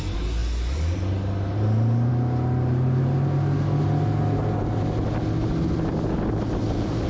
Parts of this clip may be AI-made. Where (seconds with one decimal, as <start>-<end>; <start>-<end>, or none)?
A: none